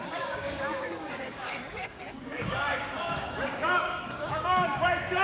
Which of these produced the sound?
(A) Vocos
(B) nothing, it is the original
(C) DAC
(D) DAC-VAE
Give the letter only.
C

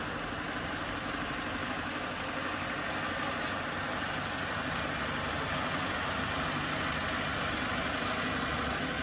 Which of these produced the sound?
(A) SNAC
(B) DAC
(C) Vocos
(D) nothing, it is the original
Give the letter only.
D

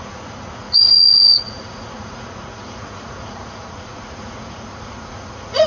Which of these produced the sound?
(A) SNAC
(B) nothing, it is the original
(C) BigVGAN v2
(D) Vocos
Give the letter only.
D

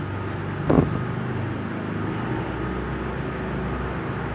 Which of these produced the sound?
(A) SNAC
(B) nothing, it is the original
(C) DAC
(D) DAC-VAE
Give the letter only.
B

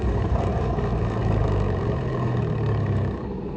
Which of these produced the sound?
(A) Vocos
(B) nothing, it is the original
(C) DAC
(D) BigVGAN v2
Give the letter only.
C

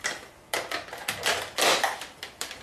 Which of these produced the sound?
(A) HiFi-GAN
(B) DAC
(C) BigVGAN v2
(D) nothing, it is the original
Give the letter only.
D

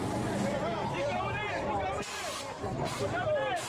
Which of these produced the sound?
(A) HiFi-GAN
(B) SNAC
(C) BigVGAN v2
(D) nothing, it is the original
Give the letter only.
C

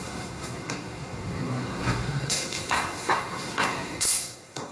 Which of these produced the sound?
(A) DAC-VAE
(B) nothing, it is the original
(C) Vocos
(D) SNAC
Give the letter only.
D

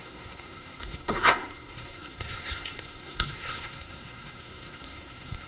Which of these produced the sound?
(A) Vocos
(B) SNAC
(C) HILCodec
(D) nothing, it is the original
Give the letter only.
B